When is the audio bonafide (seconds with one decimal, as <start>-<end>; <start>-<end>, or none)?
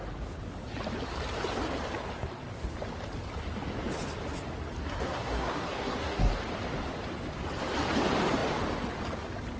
0.0-4.8; 6.3-9.6